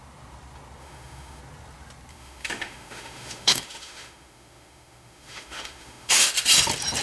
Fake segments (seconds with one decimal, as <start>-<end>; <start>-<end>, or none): 0.8-1.4; 2.1-6.3